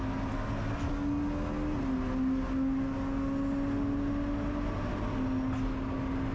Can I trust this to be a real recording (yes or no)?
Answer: yes